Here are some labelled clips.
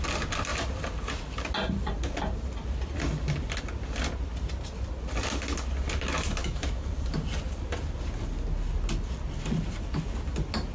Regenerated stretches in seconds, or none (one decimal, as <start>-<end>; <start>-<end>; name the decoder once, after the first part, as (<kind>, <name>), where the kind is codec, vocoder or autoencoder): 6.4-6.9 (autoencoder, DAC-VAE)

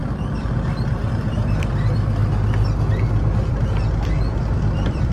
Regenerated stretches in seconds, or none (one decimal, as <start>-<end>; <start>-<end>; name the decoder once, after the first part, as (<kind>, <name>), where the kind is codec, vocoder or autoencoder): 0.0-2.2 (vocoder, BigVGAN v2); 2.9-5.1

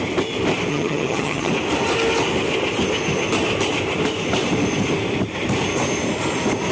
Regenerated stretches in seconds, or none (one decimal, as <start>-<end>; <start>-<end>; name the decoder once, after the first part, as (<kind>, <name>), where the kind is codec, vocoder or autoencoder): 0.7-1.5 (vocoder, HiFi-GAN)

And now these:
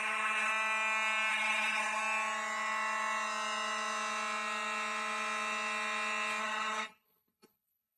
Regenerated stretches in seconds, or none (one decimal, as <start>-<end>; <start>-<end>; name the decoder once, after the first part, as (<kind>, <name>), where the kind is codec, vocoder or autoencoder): 0.0-0.5 (codec, HILCodec); 1.3-2.0; 6.4-8.0

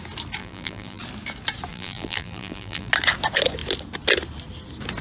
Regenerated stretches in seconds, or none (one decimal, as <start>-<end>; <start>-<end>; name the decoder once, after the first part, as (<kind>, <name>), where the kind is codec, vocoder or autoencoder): 0.4-1.0 (vocoder, BigVGAN v2); 1.7-2.9

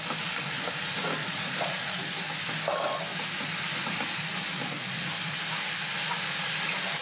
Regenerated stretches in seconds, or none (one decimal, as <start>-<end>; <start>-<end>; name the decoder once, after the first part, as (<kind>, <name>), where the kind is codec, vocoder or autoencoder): 1.2-2.0 (vocoder, Vocos); 4.6-5.1

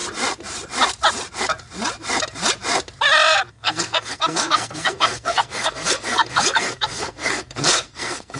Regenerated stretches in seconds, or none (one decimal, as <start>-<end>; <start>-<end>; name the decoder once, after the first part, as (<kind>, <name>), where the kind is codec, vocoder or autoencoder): 3.5-8.4 (codec, SNAC)

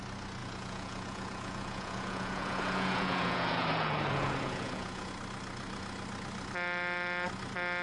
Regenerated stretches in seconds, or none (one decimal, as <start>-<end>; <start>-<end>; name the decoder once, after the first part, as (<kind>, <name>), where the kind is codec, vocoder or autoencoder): 0.4-5.1 (vocoder, Vocos)